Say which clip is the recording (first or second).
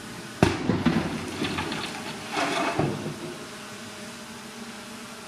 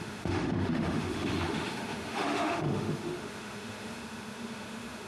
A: first